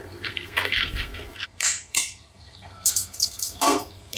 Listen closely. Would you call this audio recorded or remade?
remade